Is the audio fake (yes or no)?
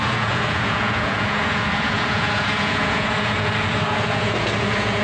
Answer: yes